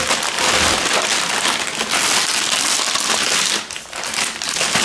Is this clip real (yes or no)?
yes